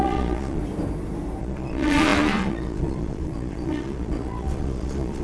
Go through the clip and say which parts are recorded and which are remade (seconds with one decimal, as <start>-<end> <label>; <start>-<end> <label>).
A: 0.0-0.6 remade; 0.6-1.4 recorded; 1.4-5.2 remade